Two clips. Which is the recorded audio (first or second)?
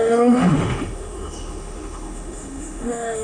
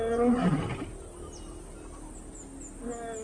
second